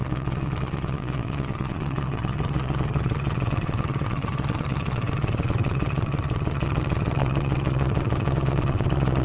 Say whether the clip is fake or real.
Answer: fake